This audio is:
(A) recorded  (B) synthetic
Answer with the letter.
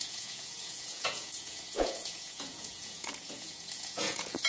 B